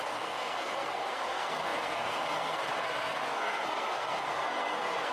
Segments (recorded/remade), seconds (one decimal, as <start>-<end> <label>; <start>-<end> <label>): 0.0-5.1 remade